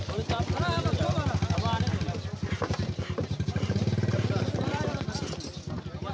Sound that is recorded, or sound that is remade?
recorded